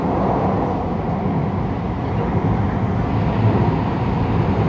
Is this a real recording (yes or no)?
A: yes